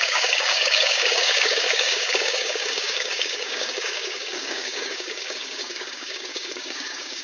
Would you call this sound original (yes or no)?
no